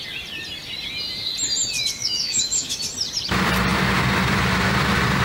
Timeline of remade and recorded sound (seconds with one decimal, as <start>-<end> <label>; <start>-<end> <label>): 0.0-2.0 recorded; 2.0-2.8 remade; 2.8-5.2 recorded